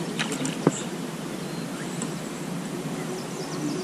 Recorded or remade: recorded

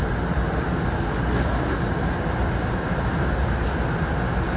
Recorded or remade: recorded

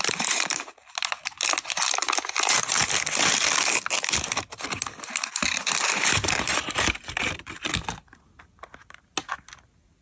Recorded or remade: recorded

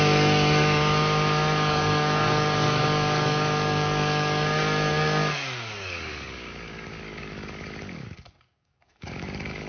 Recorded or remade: remade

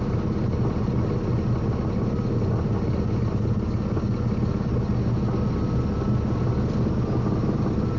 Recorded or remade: recorded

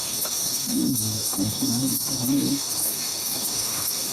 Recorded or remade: remade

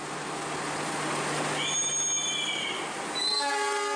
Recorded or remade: recorded